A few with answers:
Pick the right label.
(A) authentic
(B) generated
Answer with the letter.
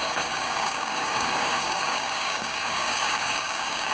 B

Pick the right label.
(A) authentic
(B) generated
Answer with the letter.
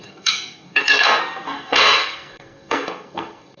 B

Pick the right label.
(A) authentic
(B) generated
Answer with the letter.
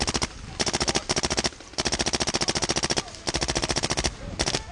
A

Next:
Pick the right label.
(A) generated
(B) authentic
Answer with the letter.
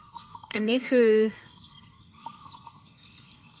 A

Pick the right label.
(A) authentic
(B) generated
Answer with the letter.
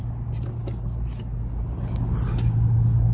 A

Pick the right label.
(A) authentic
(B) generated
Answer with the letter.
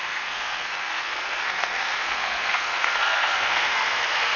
B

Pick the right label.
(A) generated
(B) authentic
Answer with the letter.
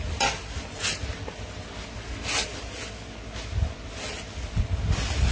B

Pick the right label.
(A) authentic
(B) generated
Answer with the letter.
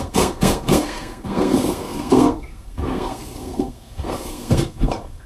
B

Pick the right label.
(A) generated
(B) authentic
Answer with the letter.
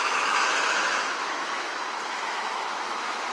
A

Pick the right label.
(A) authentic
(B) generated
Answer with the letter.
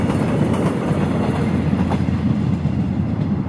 A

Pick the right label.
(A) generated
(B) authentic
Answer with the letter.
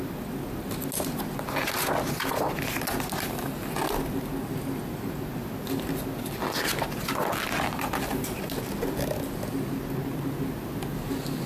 B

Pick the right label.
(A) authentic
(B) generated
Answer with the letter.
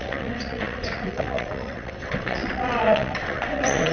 B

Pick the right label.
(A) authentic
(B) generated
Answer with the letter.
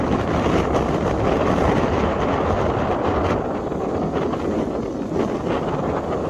A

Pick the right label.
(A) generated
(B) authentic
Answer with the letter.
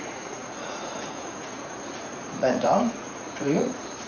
A